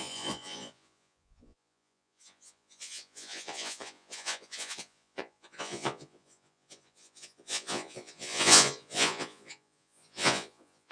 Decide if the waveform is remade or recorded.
remade